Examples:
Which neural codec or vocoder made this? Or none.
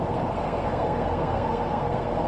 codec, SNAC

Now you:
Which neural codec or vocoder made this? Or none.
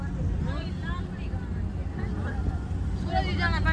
none